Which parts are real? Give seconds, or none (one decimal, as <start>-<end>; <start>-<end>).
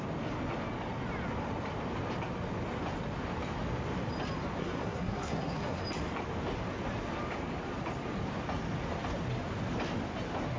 0.0-4.6; 5.8-10.6